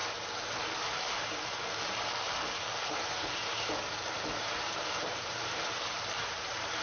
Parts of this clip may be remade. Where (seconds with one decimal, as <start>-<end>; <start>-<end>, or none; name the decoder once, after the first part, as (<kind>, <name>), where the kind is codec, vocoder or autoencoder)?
2.9-6.8 (vocoder, BigVGAN v2)